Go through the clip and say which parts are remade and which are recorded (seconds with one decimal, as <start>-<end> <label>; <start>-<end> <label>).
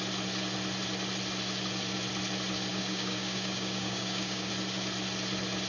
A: 0.0-2.7 recorded; 2.7-4.5 remade; 4.5-5.7 recorded